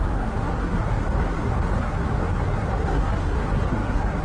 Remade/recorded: remade